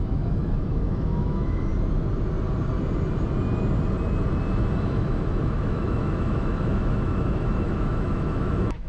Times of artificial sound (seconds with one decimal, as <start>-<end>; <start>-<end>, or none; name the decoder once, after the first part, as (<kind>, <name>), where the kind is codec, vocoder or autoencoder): 0.0-1.7 (autoencoder, DAC-VAE); 4.8-8.9